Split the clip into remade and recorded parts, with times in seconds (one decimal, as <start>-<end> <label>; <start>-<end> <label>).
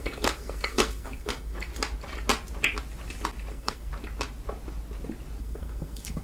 0.0-1.7 remade; 1.7-3.5 recorded; 3.5-3.9 remade; 3.9-5.4 recorded; 5.4-6.2 remade